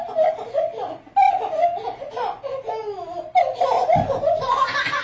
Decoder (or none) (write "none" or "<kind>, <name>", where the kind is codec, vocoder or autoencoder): none